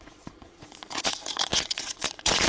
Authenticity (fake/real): fake